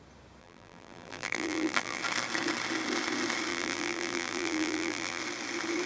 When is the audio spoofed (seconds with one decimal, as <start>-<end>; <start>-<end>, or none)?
0.4-2.0; 3.5-5.2